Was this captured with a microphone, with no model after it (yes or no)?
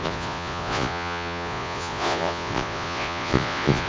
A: no